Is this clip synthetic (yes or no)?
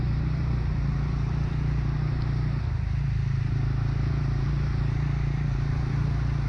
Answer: yes